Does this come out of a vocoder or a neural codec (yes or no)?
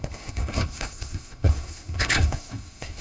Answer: yes